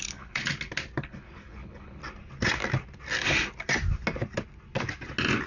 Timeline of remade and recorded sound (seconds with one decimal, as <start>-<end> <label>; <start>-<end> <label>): 0.0-0.4 remade; 0.4-1.0 recorded; 1.0-2.0 remade; 2.0-5.5 recorded

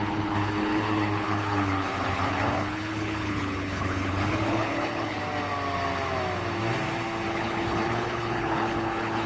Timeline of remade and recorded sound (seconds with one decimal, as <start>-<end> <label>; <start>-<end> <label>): 0.0-5.2 remade; 5.2-7.3 recorded; 7.3-9.3 remade

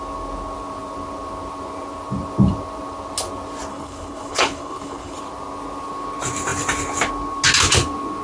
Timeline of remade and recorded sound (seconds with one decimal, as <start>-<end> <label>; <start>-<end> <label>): 0.0-3.7 recorded; 3.7-5.2 remade; 5.2-8.2 recorded

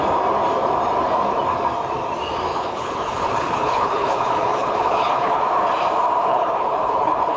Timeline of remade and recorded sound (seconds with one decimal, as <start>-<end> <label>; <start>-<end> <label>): 0.0-2.5 recorded; 2.5-5.4 remade; 5.4-6.3 recorded; 6.3-7.4 remade

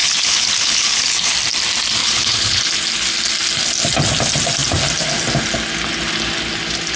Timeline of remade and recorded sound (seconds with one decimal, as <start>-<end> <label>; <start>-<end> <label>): 0.0-1.3 remade; 1.3-2.0 recorded; 2.0-2.6 remade; 2.6-7.0 recorded